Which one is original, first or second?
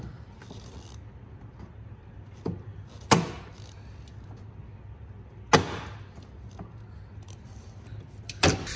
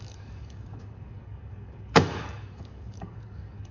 first